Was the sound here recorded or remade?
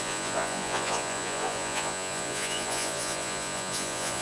remade